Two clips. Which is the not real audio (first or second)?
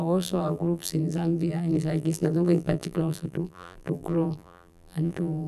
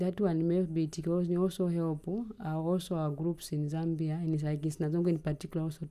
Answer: first